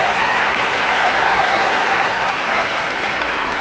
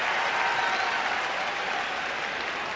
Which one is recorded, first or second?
second